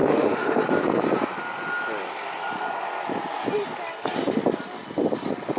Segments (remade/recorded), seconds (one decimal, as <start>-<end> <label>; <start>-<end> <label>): 0.0-0.6 remade; 0.6-5.6 recorded